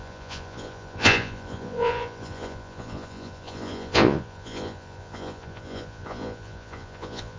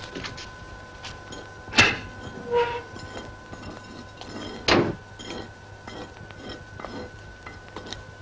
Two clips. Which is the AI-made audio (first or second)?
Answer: first